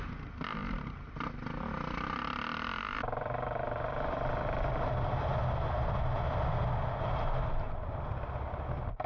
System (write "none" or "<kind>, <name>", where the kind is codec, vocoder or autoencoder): none